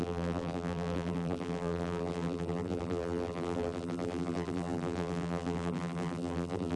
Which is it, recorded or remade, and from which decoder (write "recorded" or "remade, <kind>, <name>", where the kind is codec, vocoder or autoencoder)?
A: remade, vocoder, BigVGAN v2